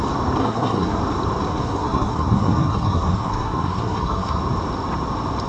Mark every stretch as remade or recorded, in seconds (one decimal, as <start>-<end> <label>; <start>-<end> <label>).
0.0-0.4 recorded; 0.4-1.0 remade; 1.0-1.5 recorded; 1.5-4.4 remade; 4.4-5.5 recorded